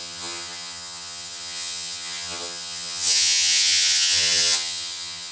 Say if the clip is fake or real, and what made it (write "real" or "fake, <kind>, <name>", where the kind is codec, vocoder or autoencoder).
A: fake, vocoder, HiFi-GAN